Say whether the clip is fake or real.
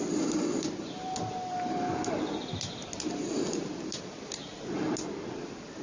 real